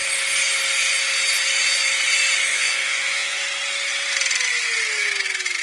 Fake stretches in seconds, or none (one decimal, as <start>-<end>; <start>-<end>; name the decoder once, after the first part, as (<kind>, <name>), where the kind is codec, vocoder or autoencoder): 2.5-3.4 (vocoder, Vocos)